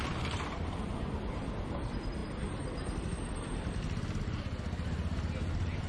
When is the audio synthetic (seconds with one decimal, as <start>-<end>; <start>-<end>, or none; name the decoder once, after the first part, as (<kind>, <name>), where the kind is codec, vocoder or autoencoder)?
none